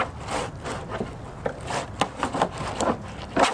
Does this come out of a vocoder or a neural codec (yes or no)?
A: no